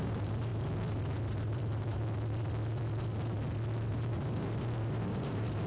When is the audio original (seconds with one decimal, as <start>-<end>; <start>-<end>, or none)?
0.5-1.3; 2.0-3.9